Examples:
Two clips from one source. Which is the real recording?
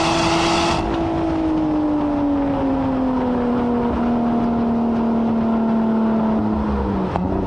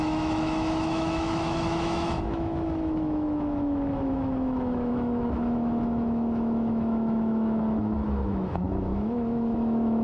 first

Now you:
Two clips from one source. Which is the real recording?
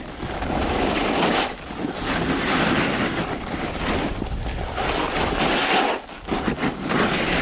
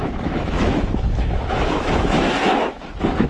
first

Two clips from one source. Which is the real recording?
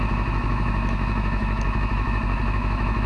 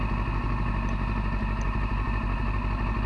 second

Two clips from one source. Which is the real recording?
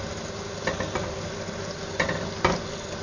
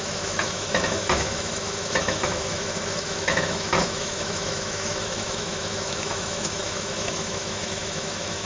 first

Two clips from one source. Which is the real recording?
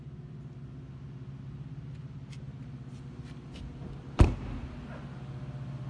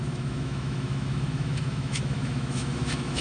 first